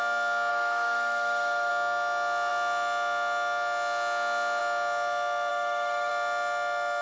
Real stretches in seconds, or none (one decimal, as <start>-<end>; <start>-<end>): 0.0-0.5; 1.7-5.5; 6.1-7.0